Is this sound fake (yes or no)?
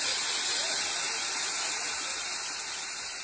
no